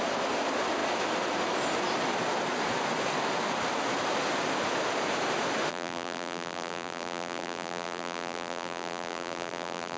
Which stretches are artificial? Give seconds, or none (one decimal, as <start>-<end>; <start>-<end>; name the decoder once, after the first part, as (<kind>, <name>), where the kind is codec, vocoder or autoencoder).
5.7-10.0 (vocoder, BigVGAN v2)